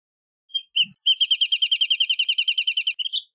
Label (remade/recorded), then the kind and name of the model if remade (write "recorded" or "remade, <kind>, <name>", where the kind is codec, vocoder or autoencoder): recorded